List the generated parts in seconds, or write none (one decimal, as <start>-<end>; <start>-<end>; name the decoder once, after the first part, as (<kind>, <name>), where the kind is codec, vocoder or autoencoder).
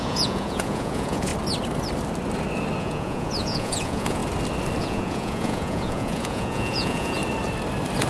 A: 0.0-1.3 (vocoder, Vocos); 2.8-4.2; 4.8-7.2